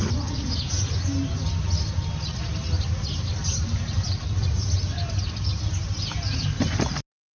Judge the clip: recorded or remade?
recorded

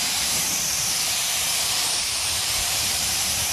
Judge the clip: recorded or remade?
remade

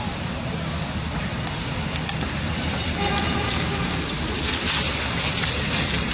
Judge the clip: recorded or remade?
recorded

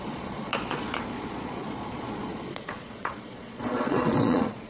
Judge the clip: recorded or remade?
remade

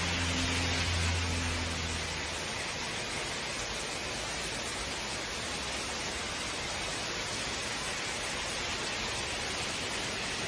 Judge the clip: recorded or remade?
recorded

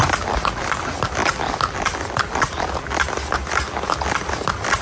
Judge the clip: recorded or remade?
recorded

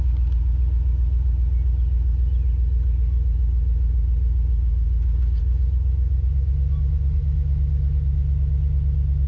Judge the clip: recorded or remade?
recorded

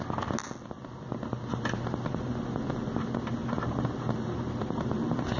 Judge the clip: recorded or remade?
recorded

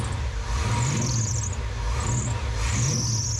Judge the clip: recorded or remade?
recorded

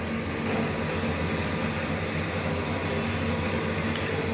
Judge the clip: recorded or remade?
recorded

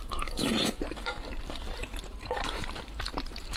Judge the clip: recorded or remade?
remade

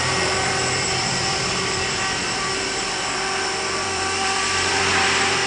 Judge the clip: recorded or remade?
remade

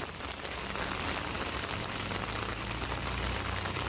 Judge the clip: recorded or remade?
recorded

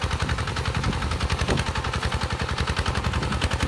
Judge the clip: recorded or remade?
recorded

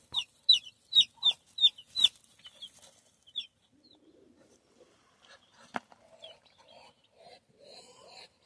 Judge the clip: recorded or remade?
recorded